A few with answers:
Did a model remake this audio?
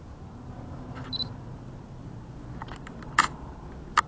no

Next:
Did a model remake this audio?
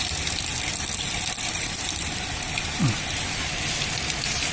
no